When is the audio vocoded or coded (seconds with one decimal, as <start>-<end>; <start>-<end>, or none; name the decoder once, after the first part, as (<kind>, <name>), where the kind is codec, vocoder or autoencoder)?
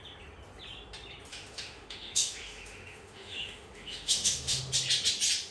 1.3-4.6 (autoencoder, DAC-VAE)